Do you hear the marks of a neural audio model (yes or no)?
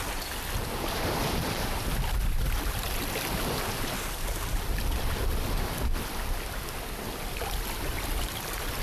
yes